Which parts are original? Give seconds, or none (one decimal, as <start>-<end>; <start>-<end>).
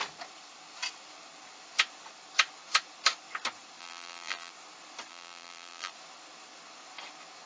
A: 0.0-3.8; 4.5-5.1; 5.9-7.5